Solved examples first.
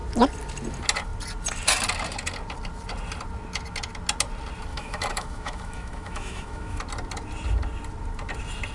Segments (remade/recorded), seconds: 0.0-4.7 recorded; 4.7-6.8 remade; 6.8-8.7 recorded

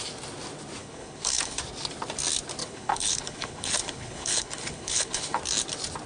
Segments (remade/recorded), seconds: 0.0-0.8 recorded; 0.8-1.6 remade; 1.6-2.6 recorded; 2.6-5.4 remade; 5.4-6.1 recorded

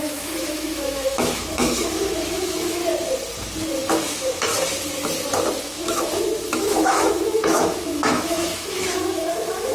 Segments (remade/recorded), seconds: 0.0-2.8 remade; 2.8-3.9 recorded; 3.9-4.5 remade; 4.5-5.6 recorded; 5.6-9.7 remade

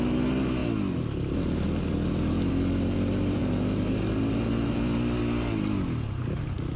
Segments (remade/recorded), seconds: 0.0-6.8 recorded

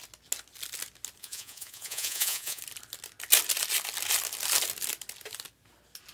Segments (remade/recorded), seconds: 0.0-1.2 recorded; 1.2-2.6 remade; 2.6-6.1 recorded

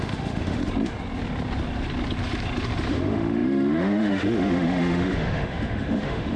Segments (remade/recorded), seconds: 0.0-0.6 remade; 0.6-2.9 recorded; 2.9-6.4 remade

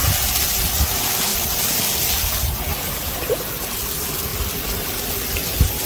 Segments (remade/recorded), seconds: 0.0-5.9 recorded